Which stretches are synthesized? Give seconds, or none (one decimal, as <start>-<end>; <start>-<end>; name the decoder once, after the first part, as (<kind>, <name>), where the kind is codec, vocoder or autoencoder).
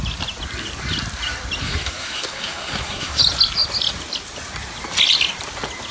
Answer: 1.6-3.2 (codec, SNAC)